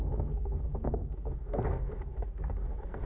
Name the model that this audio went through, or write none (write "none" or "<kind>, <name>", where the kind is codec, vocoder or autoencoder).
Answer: codec, SNAC